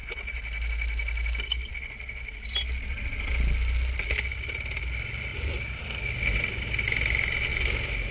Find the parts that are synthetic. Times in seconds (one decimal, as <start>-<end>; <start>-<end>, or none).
5.3-5.8; 7.5-8.1

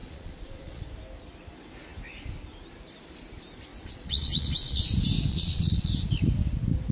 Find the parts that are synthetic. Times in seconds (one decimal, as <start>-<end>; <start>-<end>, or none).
0.0-0.8; 3.7-4.8; 5.3-5.9

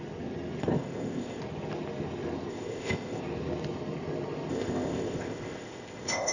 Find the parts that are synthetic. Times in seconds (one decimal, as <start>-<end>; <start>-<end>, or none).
0.6-1.4; 2.5-3.2; 4.5-6.3

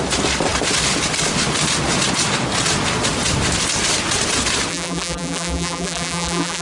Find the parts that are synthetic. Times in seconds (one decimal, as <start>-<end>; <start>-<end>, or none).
4.7-6.6

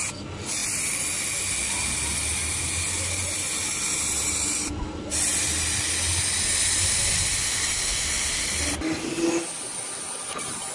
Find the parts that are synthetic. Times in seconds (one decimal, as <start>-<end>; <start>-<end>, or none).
none

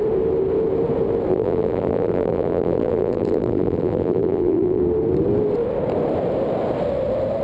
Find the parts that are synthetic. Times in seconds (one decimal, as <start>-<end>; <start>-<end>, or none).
1.3-4.8

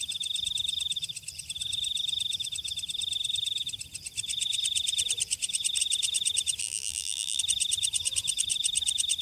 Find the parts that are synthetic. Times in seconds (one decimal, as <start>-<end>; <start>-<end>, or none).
6.6-7.4